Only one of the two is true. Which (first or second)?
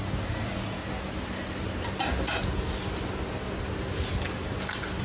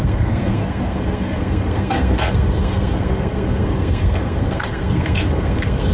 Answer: first